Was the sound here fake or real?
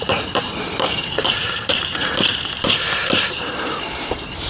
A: fake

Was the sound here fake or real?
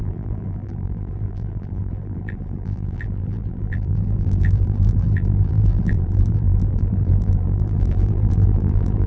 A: fake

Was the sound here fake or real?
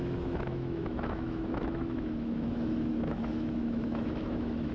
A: fake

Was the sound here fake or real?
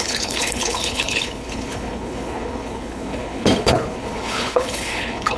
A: fake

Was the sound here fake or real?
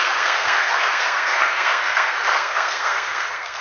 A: fake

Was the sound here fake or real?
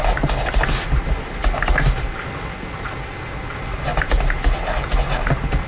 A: real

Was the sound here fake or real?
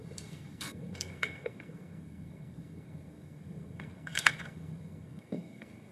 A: fake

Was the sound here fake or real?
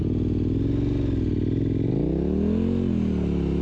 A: real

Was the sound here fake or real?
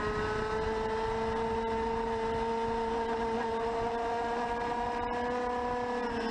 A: real